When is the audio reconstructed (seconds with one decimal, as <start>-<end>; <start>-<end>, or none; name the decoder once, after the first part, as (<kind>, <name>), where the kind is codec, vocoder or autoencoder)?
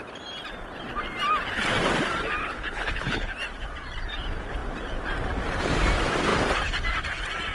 2.4-3.3 (codec, HILCodec)